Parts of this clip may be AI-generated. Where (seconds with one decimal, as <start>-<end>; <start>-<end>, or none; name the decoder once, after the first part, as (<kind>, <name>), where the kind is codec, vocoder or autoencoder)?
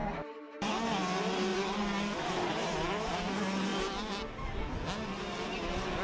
0.0-0.7 (vocoder, BigVGAN v2); 1.5-2.3